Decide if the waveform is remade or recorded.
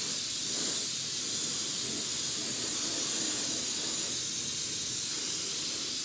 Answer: recorded